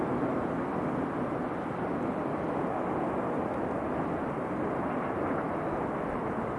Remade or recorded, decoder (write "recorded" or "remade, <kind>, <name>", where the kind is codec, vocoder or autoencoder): recorded